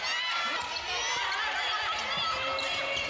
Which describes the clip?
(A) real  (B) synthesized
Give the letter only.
A